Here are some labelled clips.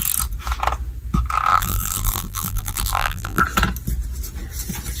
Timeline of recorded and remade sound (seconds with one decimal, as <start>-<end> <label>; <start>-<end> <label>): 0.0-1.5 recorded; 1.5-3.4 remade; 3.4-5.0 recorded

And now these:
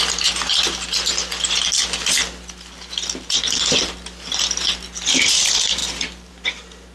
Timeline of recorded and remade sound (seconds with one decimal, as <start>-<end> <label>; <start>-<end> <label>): 0.0-5.8 recorded; 5.8-6.3 remade; 6.3-6.9 recorded

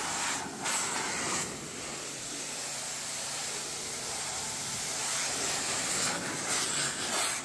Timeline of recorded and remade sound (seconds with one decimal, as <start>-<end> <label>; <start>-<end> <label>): 0.0-1.7 recorded; 1.7-4.6 remade; 4.6-7.4 recorded